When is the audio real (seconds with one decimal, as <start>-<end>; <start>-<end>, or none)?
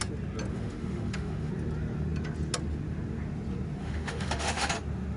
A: 0.0-0.5; 1.5-3.8; 4.7-5.2